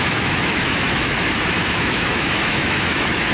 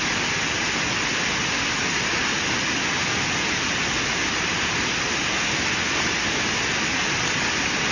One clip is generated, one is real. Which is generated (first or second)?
first